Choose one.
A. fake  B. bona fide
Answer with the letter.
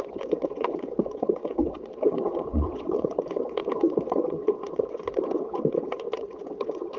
A